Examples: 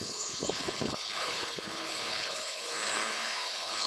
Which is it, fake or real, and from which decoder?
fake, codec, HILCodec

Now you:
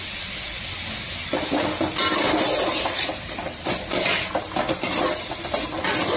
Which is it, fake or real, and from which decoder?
real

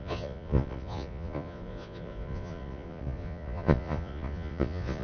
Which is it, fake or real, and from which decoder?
fake, vocoder, Vocos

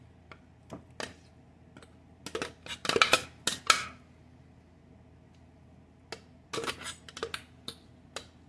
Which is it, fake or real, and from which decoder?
real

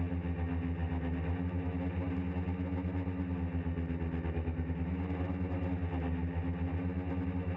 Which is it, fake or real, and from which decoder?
real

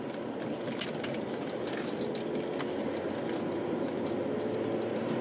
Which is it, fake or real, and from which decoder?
real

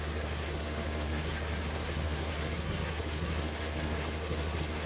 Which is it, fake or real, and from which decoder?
fake, codec, SNAC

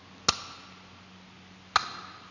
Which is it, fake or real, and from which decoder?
real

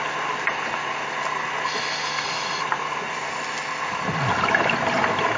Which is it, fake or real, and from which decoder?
real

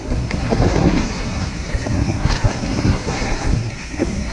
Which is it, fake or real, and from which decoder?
fake, codec, SNAC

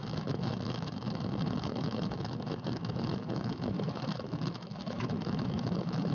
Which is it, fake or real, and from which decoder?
fake, autoencoder, DAC-VAE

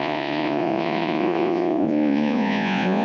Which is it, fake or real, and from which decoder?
fake, vocoder, Vocos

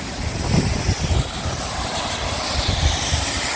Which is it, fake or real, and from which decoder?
real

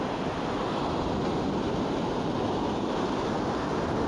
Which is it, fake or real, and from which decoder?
real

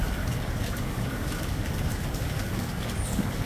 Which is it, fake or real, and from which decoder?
fake, codec, DAC